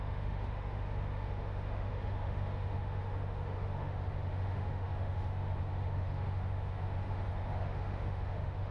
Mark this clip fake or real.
fake